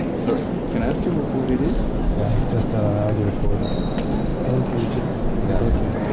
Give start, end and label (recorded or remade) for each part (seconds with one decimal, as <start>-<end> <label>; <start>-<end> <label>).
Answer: 0.0-6.1 recorded